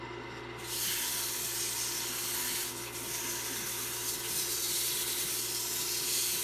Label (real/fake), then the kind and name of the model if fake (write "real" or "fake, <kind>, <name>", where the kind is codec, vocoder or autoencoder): real